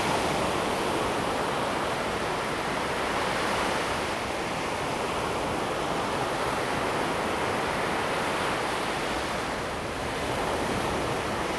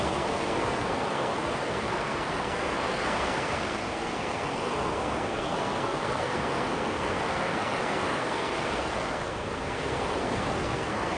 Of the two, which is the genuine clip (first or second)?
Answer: first